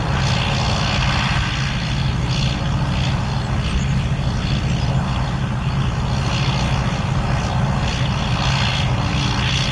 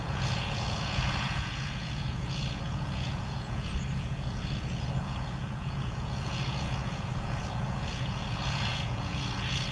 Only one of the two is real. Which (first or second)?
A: first